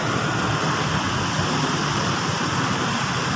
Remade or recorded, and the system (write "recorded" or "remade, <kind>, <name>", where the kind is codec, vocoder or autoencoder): remade, vocoder, BigVGAN v2